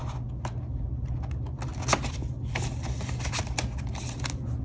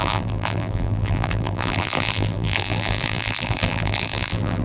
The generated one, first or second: second